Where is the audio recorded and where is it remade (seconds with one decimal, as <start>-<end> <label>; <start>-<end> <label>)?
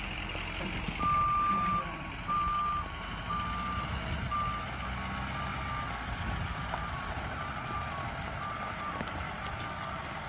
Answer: 0.0-1.5 recorded; 1.5-3.2 remade; 3.2-5.5 recorded; 5.5-8.8 remade; 8.8-10.3 recorded